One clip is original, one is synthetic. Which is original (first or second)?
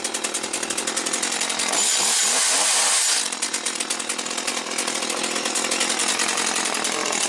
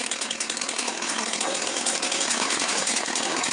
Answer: first